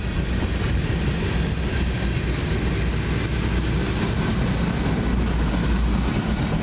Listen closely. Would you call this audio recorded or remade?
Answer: recorded